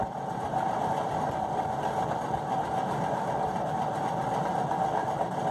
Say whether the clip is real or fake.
fake